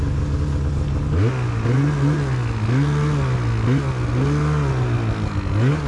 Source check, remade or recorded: recorded